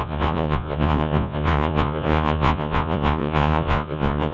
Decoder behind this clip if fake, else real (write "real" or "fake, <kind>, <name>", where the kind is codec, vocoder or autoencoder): fake, vocoder, Vocos